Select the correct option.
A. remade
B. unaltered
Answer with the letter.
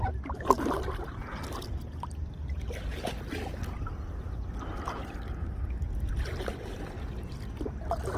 B